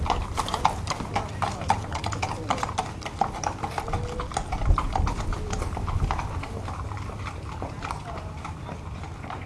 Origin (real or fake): fake